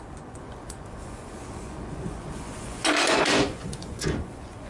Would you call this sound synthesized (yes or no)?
yes